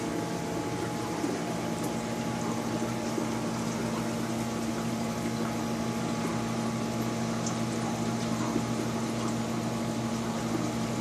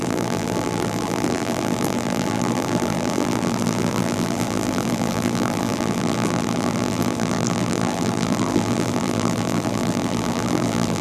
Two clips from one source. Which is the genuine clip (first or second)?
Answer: first